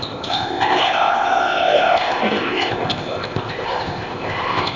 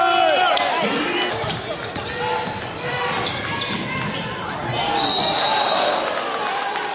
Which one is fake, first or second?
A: first